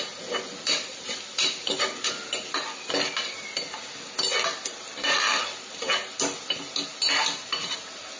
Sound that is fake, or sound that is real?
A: real